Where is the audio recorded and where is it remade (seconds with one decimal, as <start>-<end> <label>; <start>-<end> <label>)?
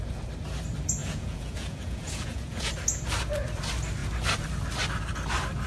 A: 0.0-1.0 recorded; 1.0-2.7 remade; 2.7-5.7 recorded